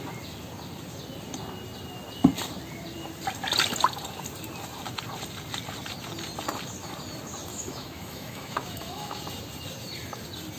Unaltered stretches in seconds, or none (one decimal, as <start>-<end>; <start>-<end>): 0.0-7.5; 9.2-10.6